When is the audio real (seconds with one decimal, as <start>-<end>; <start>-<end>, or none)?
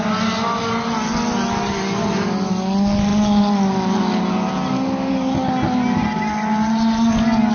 0.0-7.5